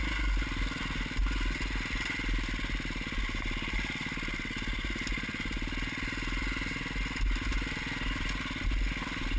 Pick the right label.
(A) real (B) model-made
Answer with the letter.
A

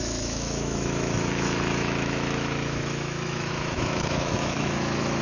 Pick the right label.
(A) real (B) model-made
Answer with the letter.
B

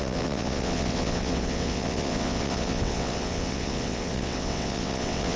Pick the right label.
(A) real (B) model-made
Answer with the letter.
B